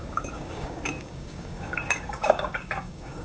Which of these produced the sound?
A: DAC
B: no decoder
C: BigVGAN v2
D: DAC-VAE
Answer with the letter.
A